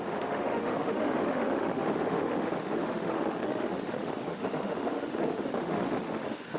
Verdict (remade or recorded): remade